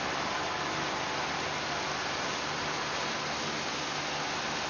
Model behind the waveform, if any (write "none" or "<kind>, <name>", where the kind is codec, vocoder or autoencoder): none